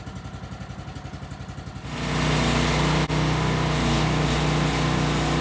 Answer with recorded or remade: recorded